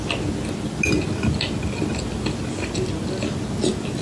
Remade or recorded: recorded